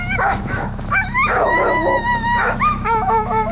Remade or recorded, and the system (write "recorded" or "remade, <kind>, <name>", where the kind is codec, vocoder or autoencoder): remade, autoencoder, DAC-VAE